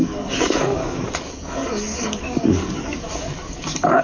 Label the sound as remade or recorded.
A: remade